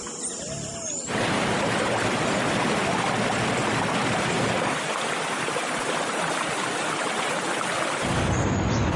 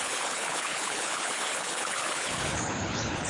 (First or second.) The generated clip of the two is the second